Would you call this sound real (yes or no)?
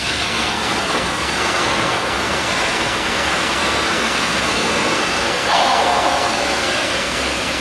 no